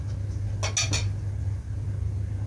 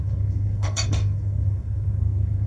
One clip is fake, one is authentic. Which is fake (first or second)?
second